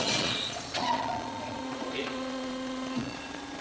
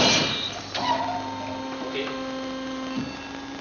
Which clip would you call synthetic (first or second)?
first